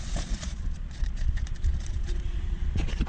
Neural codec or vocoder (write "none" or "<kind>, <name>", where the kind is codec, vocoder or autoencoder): vocoder, Vocos